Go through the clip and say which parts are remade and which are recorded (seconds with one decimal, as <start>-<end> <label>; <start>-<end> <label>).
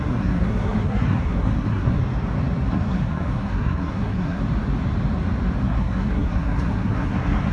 0.0-2.0 remade; 2.0-2.7 recorded; 2.7-4.4 remade; 4.4-5.6 recorded; 5.6-7.5 remade